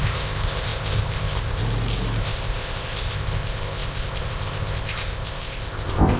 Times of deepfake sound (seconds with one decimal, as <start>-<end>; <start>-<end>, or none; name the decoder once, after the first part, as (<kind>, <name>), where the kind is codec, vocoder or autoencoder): 0.0-1.6 (codec, ZipCodec); 2.2-6.2